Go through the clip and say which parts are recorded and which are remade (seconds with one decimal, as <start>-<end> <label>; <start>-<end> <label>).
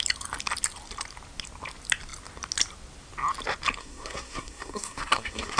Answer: 0.0-3.8 recorded; 3.8-5.6 remade